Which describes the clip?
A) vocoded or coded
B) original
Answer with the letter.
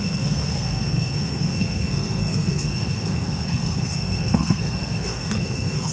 A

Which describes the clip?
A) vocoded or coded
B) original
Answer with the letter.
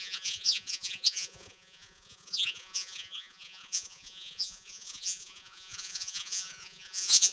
A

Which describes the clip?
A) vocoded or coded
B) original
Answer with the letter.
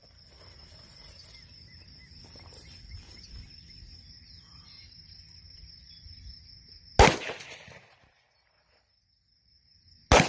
B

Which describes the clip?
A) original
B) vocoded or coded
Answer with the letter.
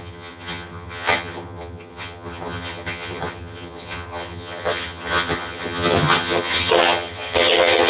B